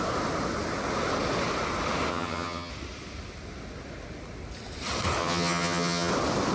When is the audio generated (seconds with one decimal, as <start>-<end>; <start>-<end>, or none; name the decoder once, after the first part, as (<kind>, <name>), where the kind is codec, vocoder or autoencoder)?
2.1-2.7 (vocoder, HiFi-GAN); 5.2-6.1